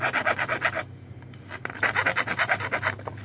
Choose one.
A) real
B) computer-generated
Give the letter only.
A